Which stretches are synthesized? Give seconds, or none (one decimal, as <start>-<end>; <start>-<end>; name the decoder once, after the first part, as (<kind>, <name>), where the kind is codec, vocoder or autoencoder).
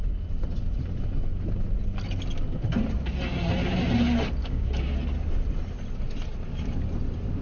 4.4-4.9 (codec, DAC)